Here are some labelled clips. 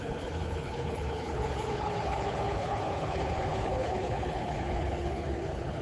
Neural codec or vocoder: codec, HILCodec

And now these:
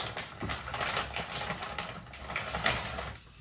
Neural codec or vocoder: none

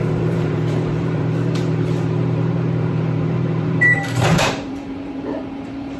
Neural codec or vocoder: vocoder, BigVGAN v2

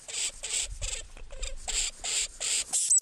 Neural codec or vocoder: none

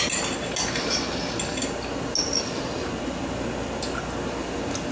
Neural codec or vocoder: none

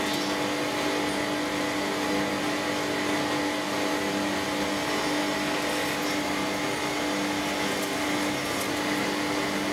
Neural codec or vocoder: none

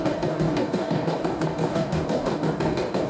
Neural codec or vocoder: codec, DAC